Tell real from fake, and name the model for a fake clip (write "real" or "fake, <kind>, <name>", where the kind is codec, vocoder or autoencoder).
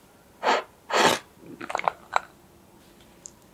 real